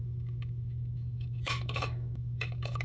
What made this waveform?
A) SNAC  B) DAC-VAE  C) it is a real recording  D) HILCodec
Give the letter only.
B